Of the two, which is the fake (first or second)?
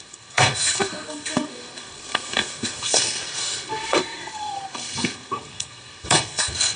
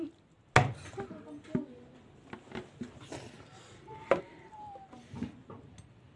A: first